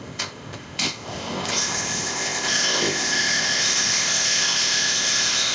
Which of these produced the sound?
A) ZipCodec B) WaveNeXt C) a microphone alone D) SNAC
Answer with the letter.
A